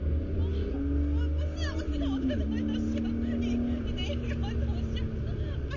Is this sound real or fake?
real